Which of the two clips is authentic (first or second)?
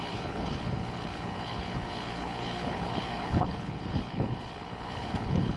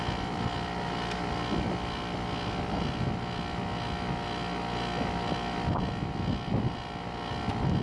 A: second